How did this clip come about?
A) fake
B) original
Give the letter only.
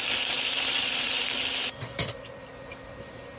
B